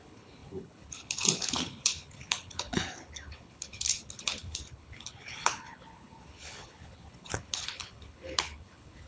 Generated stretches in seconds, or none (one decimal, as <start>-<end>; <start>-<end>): 0.0-9.1